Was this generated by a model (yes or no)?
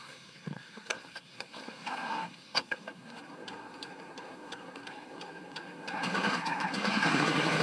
yes